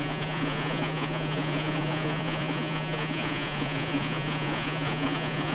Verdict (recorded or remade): remade